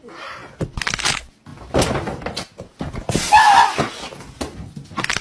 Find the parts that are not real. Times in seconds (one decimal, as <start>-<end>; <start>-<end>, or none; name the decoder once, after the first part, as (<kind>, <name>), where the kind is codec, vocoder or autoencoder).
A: none